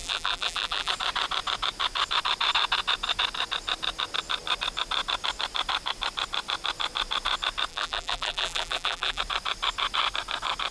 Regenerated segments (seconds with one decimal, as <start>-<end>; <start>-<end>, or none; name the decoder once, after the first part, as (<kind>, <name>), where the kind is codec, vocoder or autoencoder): 0.0-0.9 (vocoder, BigVGAN v2); 7.7-9.2